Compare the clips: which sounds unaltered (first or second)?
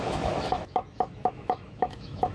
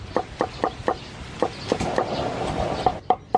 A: second